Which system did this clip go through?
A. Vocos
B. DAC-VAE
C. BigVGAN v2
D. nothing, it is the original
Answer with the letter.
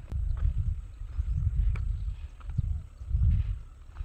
D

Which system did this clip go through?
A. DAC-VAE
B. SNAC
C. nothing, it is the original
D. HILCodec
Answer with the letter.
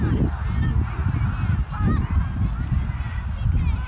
C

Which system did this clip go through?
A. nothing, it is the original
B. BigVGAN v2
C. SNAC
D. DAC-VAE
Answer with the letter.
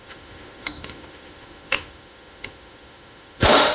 D